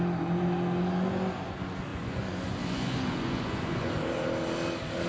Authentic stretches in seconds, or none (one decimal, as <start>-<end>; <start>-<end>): 0.0-1.9; 3.9-5.1